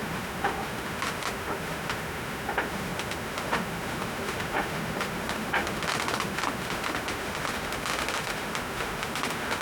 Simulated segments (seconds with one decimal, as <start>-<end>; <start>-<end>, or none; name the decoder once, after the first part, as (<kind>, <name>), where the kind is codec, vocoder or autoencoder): 0.0-9.6 (autoencoder, DAC-VAE)